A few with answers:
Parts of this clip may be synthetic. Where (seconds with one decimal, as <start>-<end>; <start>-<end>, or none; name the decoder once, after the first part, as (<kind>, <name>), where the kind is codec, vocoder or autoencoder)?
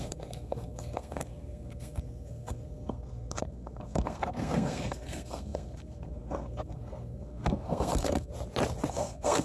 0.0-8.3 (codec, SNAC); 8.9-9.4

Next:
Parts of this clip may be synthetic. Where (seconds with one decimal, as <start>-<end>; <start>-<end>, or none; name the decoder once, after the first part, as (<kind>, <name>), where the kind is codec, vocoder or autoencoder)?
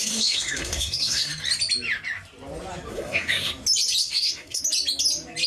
0.0-1.3 (codec, SNAC); 2.9-3.5; 4.0-4.6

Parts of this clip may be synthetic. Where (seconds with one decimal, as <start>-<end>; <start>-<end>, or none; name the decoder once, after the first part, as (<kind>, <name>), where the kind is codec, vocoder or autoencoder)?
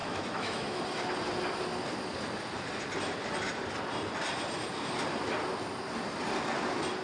0.0-0.8 (autoencoder, DAC-VAE)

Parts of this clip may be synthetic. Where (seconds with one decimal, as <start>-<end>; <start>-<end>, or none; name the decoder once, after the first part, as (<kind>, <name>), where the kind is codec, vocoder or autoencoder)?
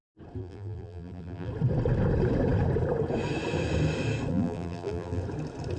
0.4-1.5 (vocoder, BigVGAN v2); 4.3-5.2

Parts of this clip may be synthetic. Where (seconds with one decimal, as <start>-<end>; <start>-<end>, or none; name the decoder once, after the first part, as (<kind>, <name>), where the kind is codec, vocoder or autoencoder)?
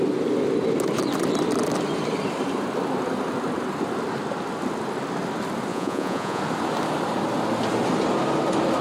5.7-6.4 (vocoder, Vocos)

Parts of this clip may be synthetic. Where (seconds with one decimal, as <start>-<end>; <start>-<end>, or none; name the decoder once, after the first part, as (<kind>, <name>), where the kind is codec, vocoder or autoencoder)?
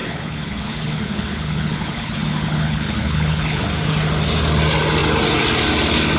0.0-3.7 (codec, HILCodec)